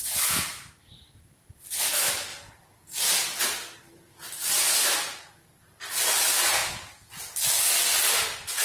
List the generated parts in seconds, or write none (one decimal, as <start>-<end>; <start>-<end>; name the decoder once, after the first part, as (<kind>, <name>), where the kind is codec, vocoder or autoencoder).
0.0-1.8 (vocoder, BigVGAN v2); 2.3-3.9; 6.6-7.3